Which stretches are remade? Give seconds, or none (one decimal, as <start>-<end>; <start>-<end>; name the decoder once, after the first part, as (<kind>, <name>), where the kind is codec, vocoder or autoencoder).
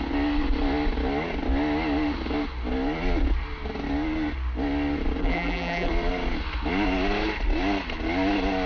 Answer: 5.2-5.9 (vocoder, BigVGAN v2)